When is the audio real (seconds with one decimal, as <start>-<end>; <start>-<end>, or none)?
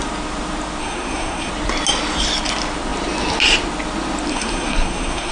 0.0-0.8; 1.5-4.3